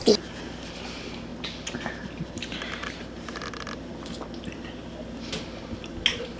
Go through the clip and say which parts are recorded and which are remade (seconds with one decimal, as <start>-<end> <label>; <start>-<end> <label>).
0.0-6.4 recorded